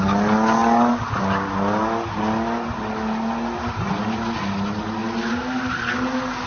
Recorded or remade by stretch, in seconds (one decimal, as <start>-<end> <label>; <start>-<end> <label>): 0.0-6.5 recorded